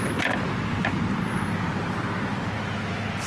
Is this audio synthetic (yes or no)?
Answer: no